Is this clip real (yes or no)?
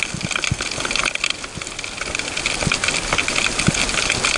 yes